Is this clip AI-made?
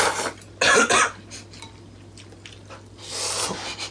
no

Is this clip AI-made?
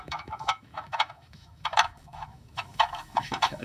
yes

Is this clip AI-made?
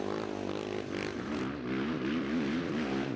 no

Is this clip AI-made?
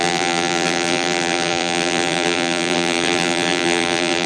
yes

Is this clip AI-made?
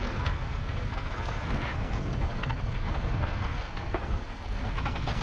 yes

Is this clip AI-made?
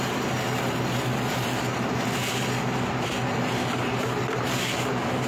no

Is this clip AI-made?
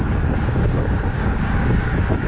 yes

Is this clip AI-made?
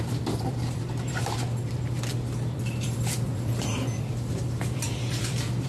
yes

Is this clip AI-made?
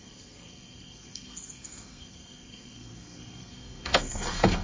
yes